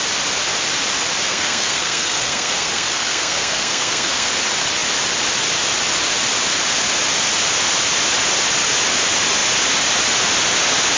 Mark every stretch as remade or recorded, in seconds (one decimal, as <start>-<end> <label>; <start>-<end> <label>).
0.0-1.3 recorded; 1.3-4.3 remade; 4.3-11.0 recorded